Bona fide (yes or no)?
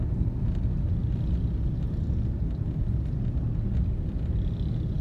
yes